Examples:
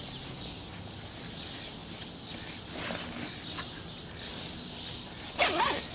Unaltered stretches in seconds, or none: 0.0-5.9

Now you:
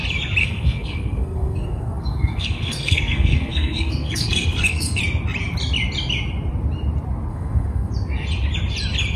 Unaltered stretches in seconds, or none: 0.0-0.4; 5.0-7.3; 7.9-9.2

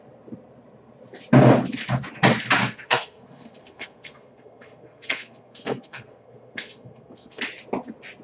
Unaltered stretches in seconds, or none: 0.0-2.6; 7.4-8.2

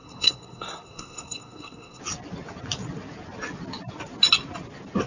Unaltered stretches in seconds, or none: 2.0-5.1

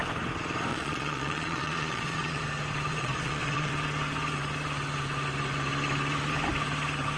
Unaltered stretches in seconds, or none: 0.0-0.7; 2.4-2.9; 3.7-7.2

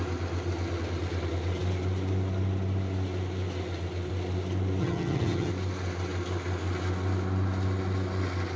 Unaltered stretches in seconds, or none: 0.0-4.8; 5.5-8.6